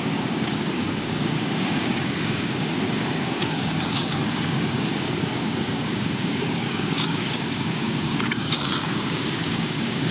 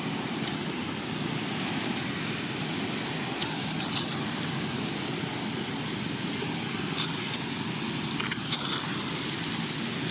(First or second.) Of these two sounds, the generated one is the first